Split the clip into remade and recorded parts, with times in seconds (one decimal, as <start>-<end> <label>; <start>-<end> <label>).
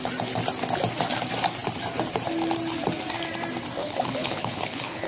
0.0-3.8 recorded; 3.8-5.1 remade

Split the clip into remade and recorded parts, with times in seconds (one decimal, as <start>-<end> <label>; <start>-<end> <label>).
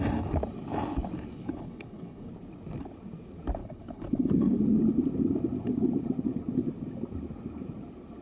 0.0-1.3 recorded; 1.3-2.3 remade; 2.3-3.6 recorded; 3.6-4.6 remade; 4.6-8.2 recorded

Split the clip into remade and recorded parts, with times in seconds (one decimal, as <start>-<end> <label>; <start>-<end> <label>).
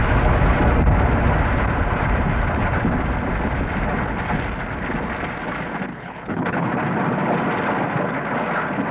0.0-5.9 recorded; 5.9-6.7 remade; 6.7-8.9 recorded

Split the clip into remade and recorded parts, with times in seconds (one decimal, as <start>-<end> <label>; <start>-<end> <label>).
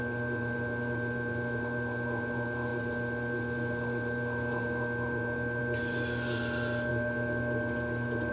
0.0-8.3 recorded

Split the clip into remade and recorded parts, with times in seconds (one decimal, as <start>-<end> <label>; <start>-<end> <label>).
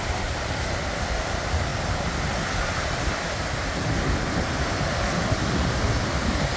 0.0-6.6 recorded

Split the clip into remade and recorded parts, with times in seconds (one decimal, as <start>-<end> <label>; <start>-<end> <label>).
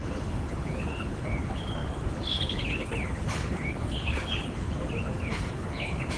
0.0-6.2 remade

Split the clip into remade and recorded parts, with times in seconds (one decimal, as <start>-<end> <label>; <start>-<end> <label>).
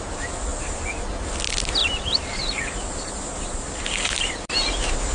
0.0-5.1 recorded